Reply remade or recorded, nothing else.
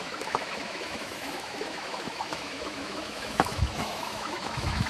remade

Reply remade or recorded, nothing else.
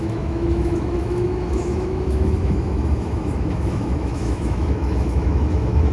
remade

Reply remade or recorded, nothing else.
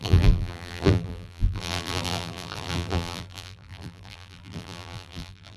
remade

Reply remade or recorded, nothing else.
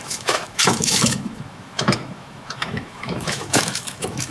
remade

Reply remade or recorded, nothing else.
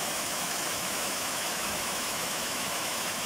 remade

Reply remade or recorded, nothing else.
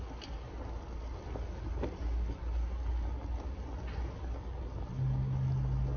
recorded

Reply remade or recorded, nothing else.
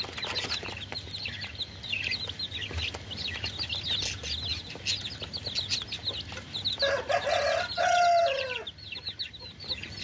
recorded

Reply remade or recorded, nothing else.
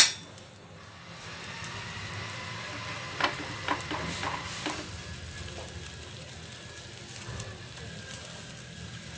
recorded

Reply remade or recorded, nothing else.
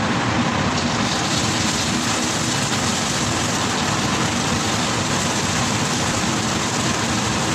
remade